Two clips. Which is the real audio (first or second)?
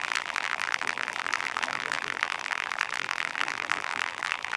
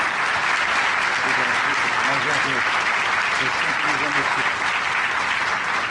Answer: second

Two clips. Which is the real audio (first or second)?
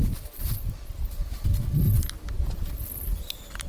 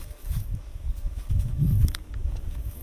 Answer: first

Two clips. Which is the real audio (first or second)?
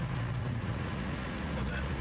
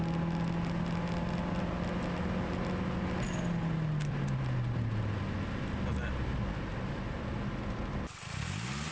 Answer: second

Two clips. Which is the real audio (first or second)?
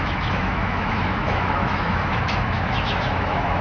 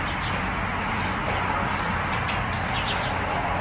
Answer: second